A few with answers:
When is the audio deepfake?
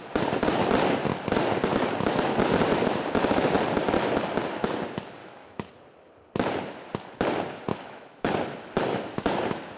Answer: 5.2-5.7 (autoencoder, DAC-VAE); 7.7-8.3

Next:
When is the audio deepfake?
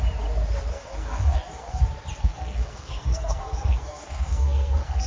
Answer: 0.7-1.8 (codec, SNAC); 2.2-5.1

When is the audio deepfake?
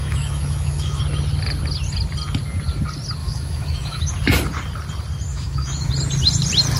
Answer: 0.0-1.0 (autoencoder, DAC-VAE); 3.2-4.0; 5.3-5.9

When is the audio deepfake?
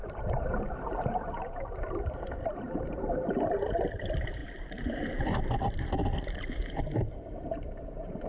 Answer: 0.0-8.3 (vocoder, BigVGAN v2)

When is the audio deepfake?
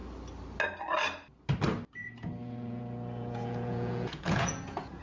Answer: 2.0-5.0 (vocoder, Vocos)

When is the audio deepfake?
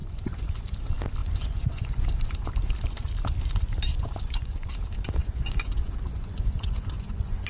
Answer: 0.0-0.6 (vocoder, Vocos); 1.2-2.5; 3.9-4.7; 5.2-7.5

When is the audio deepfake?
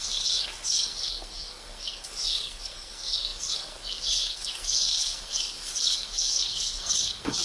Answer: 0.0-7.4 (codec, SNAC)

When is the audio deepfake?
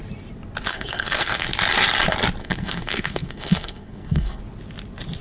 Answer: 0.7-1.5 (codec, SNAC); 2.4-4.4